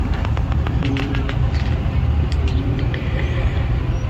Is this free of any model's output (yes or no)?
no